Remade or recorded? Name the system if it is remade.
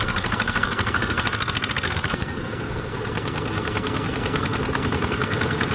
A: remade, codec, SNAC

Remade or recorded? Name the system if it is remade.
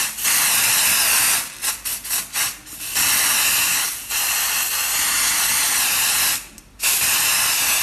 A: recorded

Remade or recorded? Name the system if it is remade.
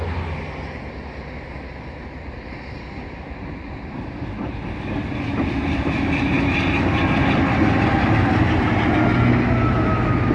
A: recorded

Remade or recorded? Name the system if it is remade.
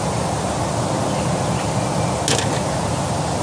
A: recorded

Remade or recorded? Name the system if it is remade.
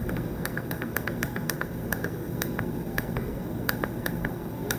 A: remade, codec, SNAC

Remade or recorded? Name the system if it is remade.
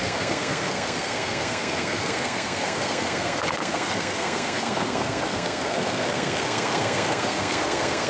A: remade, codec, SNAC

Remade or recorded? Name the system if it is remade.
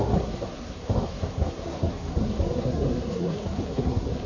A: remade, codec, SNAC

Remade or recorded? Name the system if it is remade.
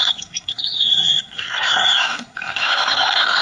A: remade, codec, SNAC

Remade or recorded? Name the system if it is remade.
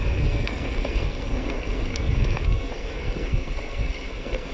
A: remade, codec, SNAC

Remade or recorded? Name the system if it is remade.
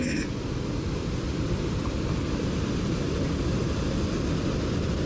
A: recorded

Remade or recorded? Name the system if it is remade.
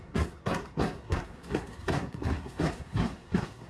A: remade, codec, SNAC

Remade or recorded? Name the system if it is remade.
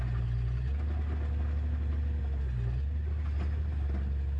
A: recorded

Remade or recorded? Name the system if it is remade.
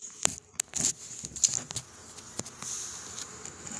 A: recorded